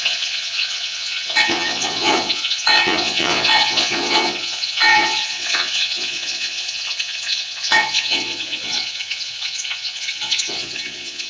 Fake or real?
fake